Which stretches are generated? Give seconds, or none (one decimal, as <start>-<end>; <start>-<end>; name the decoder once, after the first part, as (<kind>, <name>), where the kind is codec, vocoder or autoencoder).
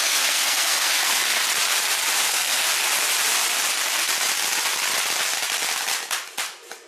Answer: 0.0-1.4 (codec, SNAC); 2.2-2.6